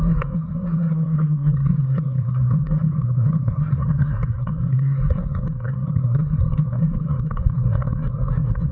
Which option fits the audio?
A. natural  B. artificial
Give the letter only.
B